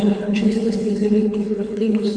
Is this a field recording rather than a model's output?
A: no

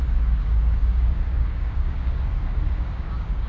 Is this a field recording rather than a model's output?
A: no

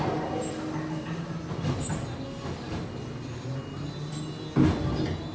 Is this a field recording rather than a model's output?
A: yes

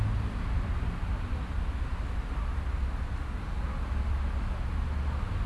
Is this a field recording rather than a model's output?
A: yes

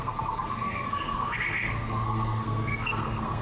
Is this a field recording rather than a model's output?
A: no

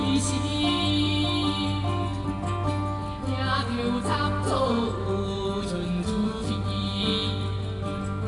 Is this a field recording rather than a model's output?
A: yes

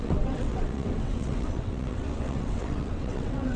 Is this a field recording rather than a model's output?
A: no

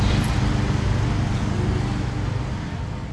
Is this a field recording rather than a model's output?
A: yes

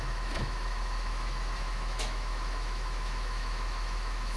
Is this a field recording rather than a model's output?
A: no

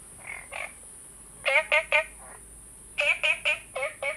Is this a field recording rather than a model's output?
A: yes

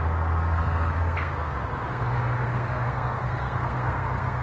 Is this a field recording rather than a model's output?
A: no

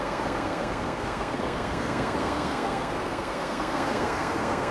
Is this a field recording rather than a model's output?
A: no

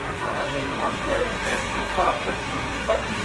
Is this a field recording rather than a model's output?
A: no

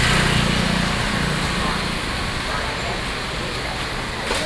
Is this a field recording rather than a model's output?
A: yes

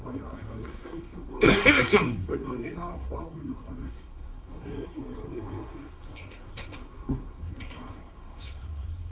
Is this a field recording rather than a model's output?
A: no